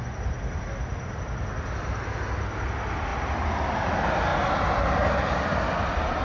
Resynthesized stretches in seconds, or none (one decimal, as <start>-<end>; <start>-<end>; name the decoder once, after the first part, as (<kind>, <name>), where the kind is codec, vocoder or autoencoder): none

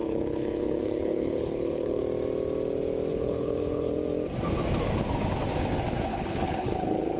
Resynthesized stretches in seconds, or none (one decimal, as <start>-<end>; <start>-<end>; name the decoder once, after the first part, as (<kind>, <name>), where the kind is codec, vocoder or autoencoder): 0.0-2.0 (codec, HILCodec); 3.1-3.9; 6.1-7.2

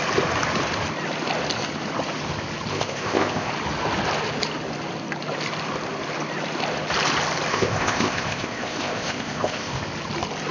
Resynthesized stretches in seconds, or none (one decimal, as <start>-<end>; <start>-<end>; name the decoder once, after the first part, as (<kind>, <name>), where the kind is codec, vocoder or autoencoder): 2.7-3.5 (codec, ZipCodec); 7.5-9.8